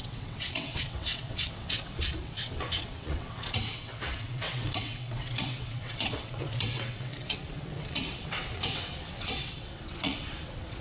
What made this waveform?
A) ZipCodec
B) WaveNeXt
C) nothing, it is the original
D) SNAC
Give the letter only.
B